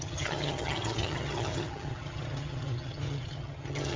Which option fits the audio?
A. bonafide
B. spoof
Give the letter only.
B